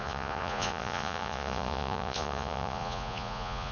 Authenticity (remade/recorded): remade